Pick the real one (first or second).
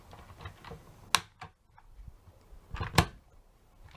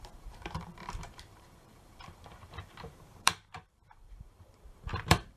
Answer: first